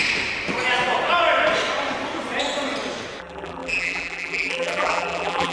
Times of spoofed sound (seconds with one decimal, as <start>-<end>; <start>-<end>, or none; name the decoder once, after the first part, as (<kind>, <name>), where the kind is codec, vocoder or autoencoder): 3.2-5.5 (vocoder, BigVGAN v2)